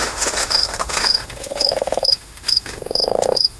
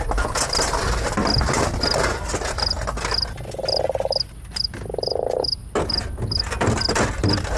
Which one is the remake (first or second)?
first